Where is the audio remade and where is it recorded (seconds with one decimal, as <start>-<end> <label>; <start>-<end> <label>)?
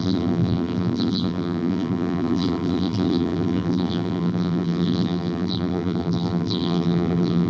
0.0-7.5 remade